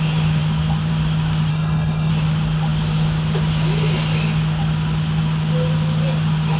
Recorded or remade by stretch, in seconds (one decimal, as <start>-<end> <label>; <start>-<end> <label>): 0.0-1.5 recorded; 1.5-2.1 remade; 2.1-6.6 recorded